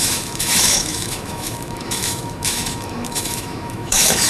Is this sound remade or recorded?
remade